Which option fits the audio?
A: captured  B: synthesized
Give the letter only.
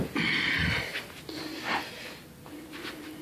A